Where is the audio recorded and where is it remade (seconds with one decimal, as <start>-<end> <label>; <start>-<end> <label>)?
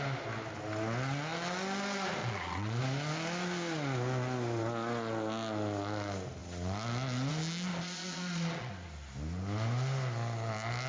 0.0-2.2 recorded; 2.2-2.8 remade; 2.8-7.7 recorded; 7.7-8.7 remade; 8.7-10.9 recorded